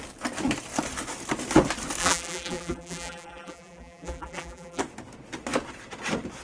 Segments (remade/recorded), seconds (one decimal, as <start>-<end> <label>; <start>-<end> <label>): 0.0-2.0 recorded; 2.0-4.8 remade; 4.8-6.4 recorded